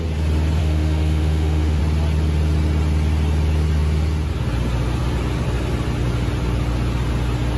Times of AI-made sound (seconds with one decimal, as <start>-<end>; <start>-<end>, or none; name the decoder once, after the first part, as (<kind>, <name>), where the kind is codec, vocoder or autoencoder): 0.6-1.8 (autoencoder, DAC-VAE)